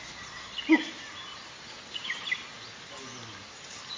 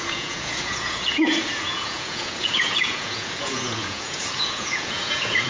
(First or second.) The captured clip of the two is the first